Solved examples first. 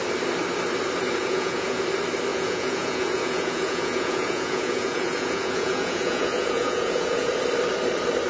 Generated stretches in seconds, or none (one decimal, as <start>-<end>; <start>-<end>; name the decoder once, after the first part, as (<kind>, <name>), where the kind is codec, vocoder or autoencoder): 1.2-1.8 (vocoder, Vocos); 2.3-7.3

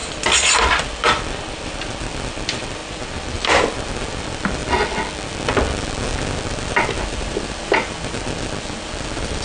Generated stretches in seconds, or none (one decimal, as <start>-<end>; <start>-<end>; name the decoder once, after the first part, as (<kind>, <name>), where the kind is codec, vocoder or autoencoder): 0.6-4.6 (vocoder, BigVGAN v2); 7.0-9.4

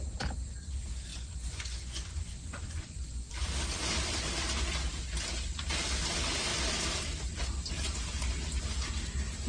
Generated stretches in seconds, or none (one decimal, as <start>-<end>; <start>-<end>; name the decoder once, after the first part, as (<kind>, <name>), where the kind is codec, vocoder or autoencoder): 1.1-3.3 (vocoder, Vocos)

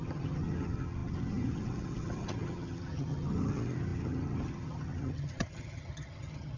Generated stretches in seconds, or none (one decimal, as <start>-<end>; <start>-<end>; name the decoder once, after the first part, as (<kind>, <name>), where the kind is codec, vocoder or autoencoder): 0.0-6.6 (vocoder, HiFi-GAN)

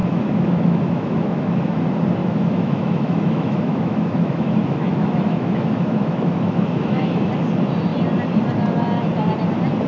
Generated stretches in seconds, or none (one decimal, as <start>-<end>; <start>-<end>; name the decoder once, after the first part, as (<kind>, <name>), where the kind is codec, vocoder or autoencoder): 0.0-1.8 (autoencoder, DAC-VAE); 2.2-7.3